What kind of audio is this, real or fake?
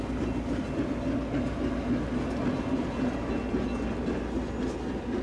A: real